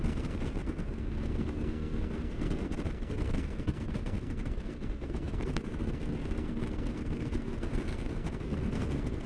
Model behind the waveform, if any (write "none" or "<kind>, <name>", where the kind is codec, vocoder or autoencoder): codec, SNAC